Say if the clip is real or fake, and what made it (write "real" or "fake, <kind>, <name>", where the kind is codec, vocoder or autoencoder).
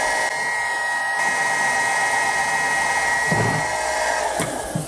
real